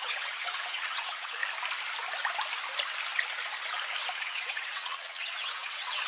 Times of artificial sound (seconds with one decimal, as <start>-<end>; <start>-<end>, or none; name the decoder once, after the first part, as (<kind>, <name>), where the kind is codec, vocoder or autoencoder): 0.0-1.4 (vocoder, WaveNeXt); 4.1-6.1